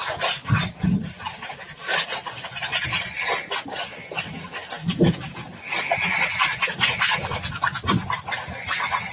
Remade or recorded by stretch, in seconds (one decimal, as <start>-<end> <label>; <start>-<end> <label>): 0.0-9.1 recorded